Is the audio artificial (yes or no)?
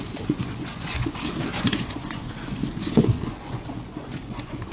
yes